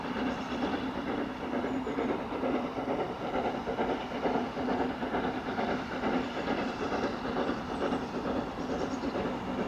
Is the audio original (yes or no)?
no